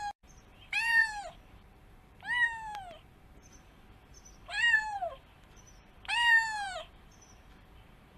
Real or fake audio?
fake